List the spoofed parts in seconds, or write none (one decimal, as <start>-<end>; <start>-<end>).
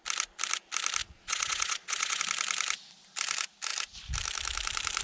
1.0-2.2